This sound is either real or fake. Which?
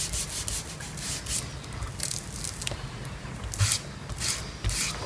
real